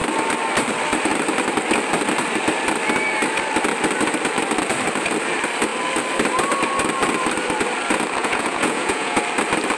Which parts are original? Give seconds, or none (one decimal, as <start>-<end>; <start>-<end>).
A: 0.0-8.2; 9.2-9.8